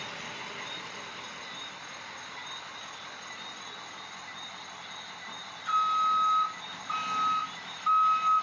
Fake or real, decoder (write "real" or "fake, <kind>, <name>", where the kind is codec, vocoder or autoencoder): real